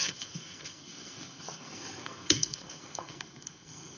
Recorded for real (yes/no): no